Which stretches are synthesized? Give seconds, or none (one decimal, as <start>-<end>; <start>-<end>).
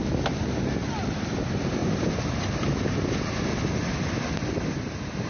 none